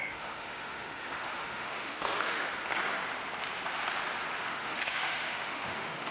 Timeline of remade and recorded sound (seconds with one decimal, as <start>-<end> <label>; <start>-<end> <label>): 0.0-2.5 remade; 2.5-4.4 recorded; 4.4-6.1 remade